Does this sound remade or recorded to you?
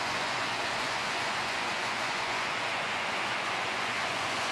remade